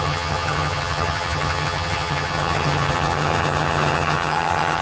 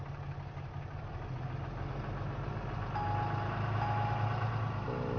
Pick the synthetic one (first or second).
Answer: first